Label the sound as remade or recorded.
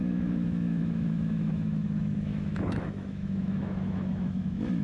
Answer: remade